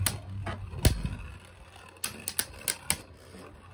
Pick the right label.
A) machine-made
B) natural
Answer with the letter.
B